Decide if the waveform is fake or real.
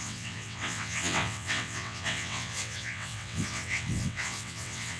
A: fake